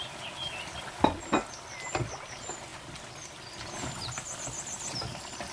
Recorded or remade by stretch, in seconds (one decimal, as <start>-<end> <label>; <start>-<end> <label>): 0.0-5.5 recorded